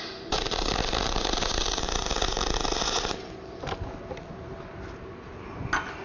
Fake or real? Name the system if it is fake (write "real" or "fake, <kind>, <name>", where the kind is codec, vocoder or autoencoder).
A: real